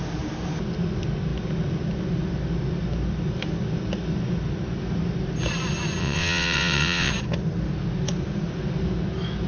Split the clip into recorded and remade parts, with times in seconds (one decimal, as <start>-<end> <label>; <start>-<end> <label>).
0.0-6.0 recorded; 6.0-7.1 remade; 7.1-9.5 recorded

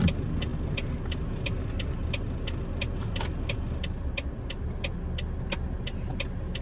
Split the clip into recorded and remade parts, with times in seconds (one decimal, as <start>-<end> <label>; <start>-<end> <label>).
0.0-6.6 recorded